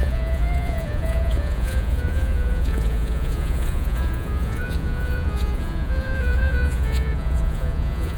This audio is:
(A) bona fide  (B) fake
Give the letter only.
B